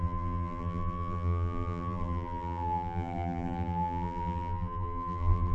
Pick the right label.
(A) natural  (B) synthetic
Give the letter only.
B